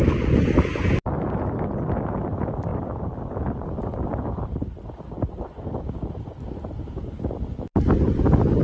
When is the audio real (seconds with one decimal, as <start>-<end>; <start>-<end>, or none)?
0.0-8.6